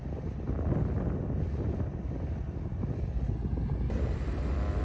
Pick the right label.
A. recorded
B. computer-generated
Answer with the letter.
A